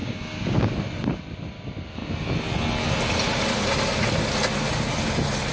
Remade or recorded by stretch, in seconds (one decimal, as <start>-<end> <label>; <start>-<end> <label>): 0.0-0.7 remade; 0.7-5.5 recorded

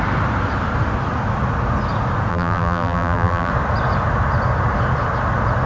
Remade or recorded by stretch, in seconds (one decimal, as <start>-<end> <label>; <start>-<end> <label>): 0.0-2.3 recorded; 2.3-3.5 remade; 3.5-5.7 recorded

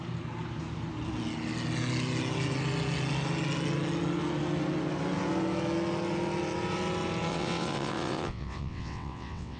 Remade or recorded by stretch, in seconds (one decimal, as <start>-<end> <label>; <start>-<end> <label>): 0.0-7.3 recorded; 7.3-9.6 remade

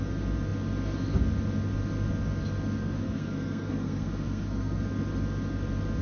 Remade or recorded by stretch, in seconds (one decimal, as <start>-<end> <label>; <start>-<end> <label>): 0.0-2.8 recorded; 2.8-4.8 remade; 4.8-6.0 recorded

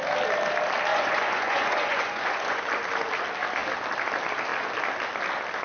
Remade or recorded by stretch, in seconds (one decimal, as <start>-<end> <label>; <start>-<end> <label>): 0.0-0.9 recorded; 0.9-2.6 remade; 2.6-5.6 recorded